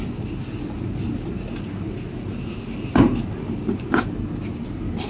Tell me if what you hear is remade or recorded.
recorded